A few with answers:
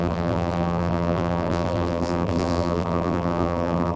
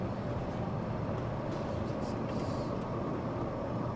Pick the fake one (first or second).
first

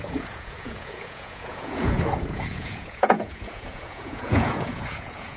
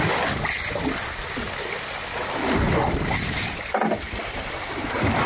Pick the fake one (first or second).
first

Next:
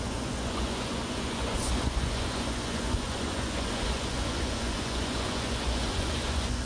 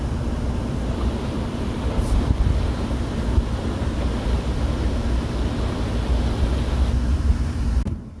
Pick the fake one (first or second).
first